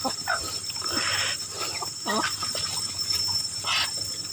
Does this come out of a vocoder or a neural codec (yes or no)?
no